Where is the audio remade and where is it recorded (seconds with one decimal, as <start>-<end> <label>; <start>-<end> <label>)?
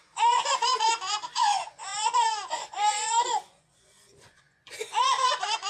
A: 0.0-5.7 remade